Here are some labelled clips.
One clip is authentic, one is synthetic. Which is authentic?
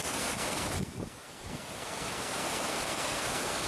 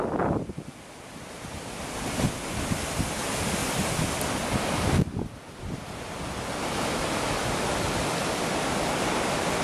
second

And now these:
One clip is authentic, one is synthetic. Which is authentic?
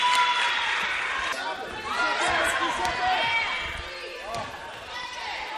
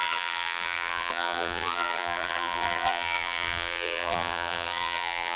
first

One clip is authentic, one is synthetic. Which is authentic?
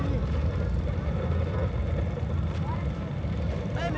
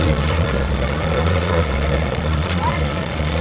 first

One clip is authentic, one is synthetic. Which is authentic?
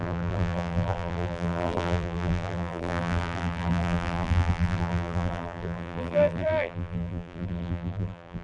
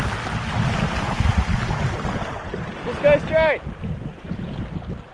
second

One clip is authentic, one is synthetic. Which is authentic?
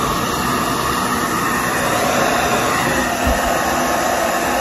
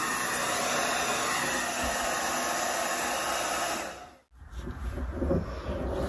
second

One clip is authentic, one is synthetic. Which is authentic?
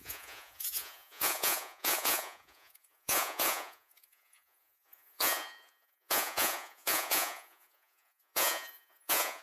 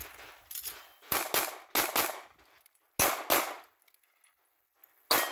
second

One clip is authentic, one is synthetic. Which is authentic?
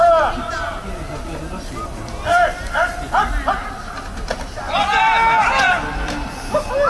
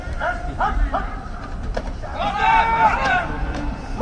first